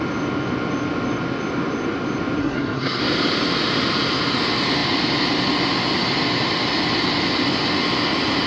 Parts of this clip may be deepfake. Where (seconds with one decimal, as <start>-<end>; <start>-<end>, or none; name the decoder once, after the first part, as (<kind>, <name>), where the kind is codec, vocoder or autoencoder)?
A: 2.4-3.0 (codec, SNAC)